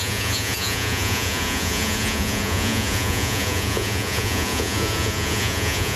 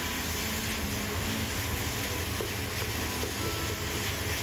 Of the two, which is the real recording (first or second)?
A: second